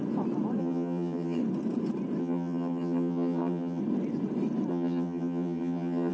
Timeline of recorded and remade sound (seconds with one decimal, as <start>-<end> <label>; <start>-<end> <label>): 0.0-0.6 recorded; 0.6-1.4 remade; 1.4-2.2 recorded; 2.2-3.8 remade; 3.8-4.7 recorded; 4.7-6.1 remade